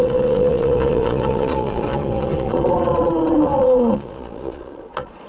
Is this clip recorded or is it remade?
remade